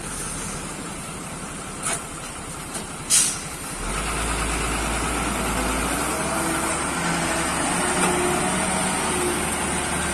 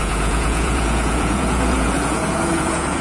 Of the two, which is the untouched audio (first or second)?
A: first